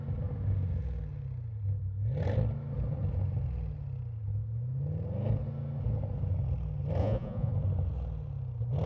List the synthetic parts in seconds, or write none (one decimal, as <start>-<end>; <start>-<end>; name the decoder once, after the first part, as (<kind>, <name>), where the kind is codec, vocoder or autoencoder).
7.0-7.5 (vocoder, Vocos)